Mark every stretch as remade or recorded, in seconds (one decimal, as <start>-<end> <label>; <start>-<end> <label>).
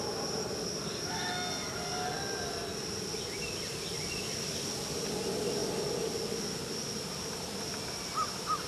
0.0-8.7 recorded